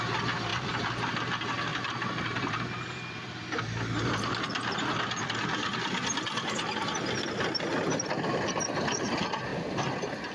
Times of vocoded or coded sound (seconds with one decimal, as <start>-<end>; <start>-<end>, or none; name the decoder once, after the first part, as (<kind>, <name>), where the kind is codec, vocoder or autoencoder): 0.5-1.1 (vocoder, BigVGAN v2); 1.7-6.7